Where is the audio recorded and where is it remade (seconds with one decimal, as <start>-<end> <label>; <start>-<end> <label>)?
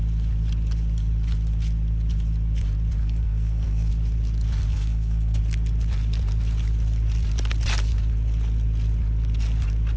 0.0-3.0 recorded; 3.0-3.9 remade; 3.9-4.7 recorded; 4.7-5.4 remade; 5.4-10.0 recorded